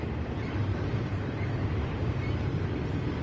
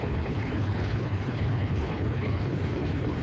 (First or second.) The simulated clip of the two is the second